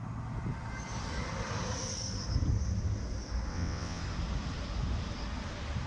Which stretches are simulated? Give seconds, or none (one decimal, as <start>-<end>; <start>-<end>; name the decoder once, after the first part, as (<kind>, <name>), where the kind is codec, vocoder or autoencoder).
3.5-4.0 (vocoder, WaveNeXt)